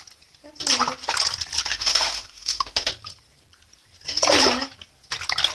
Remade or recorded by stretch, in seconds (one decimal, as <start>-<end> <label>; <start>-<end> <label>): 0.0-1.7 recorded; 1.7-2.9 remade; 2.9-5.5 recorded